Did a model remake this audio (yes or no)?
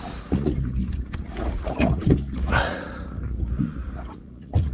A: yes